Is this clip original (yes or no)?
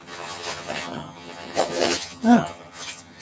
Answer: no